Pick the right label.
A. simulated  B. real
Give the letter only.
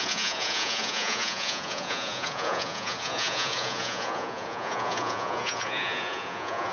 A